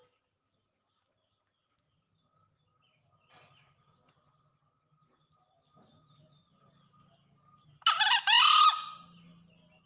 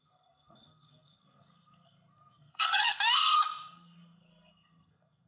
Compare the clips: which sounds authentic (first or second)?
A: first